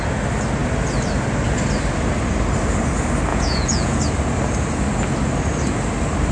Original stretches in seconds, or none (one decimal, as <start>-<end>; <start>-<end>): 0.0-3.3; 4.0-6.3